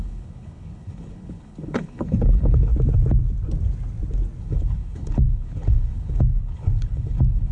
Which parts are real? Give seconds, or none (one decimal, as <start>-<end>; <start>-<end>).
2.7-4.4